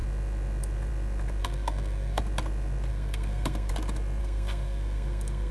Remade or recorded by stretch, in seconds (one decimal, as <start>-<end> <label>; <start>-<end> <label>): 0.0-1.4 recorded; 1.4-2.2 remade; 2.2-2.9 recorded; 2.9-3.7 remade; 3.7-4.2 recorded; 4.2-5.5 remade